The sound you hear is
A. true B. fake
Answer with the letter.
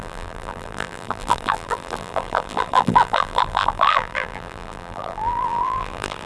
B